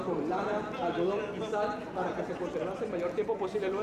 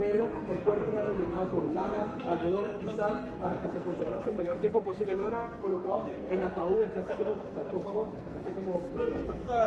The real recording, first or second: first